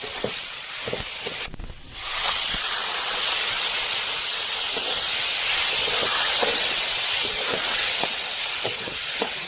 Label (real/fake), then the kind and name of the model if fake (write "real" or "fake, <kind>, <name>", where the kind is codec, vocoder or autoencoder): fake, vocoder, WaveNeXt